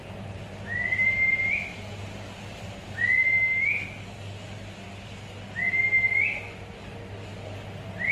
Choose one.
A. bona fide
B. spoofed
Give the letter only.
A